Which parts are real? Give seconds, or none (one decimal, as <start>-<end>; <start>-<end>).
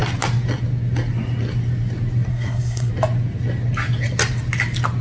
0.0-2.3; 2.9-5.0